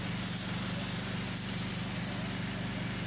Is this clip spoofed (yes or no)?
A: no